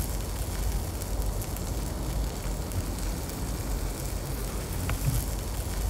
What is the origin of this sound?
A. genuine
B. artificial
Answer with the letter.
A